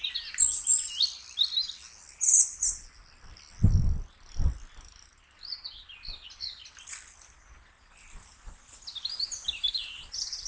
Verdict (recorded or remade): recorded